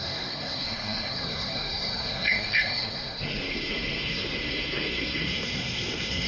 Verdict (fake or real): fake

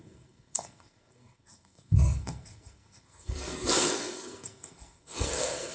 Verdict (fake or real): fake